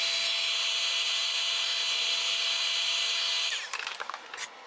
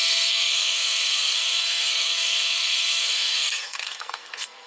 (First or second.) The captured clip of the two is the first